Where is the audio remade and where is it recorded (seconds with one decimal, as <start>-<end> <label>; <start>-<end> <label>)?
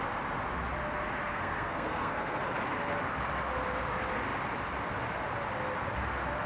0.0-1.3 recorded; 1.3-2.4 remade; 2.4-6.5 recorded